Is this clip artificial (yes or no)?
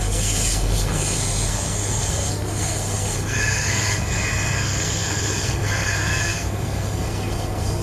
yes